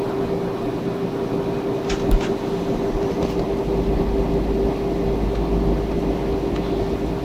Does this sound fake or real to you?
real